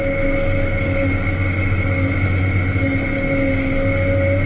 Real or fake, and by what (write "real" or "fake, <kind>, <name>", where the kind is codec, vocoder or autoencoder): real